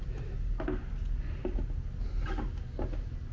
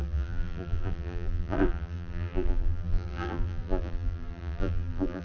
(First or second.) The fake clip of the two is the second